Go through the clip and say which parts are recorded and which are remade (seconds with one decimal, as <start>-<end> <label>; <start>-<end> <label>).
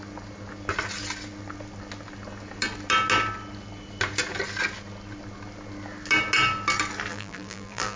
0.0-7.1 recorded; 7.1-8.0 remade